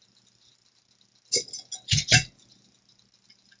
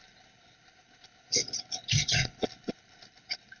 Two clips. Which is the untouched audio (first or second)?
first